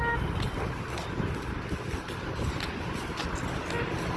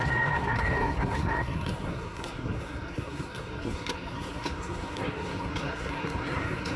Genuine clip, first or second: first